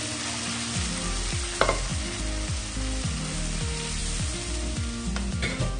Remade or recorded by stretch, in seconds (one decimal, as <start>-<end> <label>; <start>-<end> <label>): 0.0-5.8 recorded